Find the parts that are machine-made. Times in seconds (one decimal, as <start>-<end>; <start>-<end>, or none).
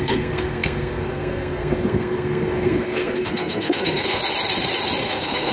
0.0-4.2; 5.0-5.5